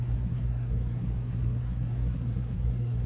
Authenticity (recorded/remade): remade